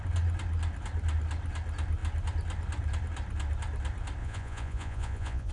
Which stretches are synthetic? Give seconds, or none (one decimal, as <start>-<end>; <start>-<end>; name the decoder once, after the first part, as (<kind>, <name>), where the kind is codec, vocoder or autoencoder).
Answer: 4.2-5.5 (vocoder, Vocos)